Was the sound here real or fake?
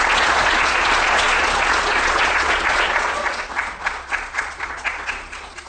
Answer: fake